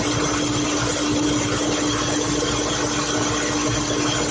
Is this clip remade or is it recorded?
recorded